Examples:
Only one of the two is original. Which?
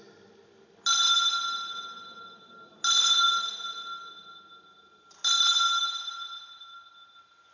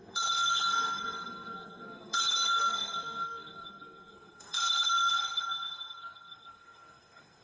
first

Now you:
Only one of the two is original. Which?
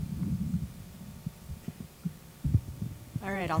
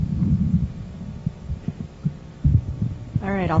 second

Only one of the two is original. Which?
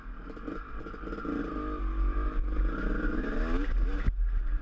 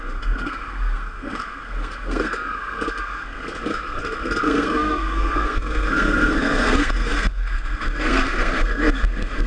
first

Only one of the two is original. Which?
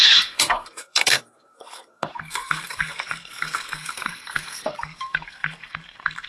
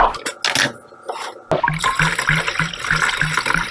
second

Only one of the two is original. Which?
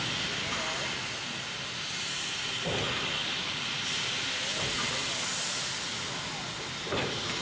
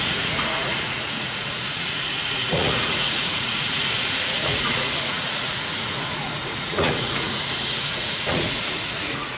first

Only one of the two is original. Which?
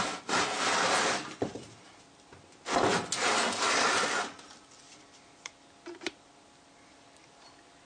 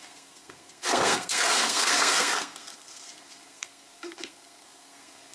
first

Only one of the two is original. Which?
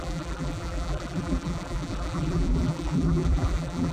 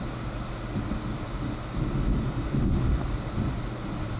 second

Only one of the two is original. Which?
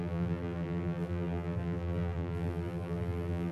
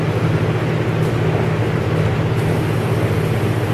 second